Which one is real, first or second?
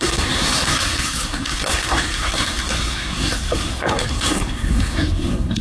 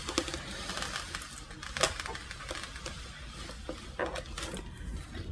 second